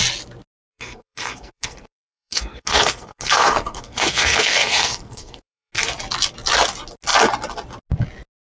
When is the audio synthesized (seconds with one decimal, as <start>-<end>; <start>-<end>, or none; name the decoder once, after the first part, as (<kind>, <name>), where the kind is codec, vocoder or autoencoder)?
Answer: 0.7-5.7 (codec, SNAC)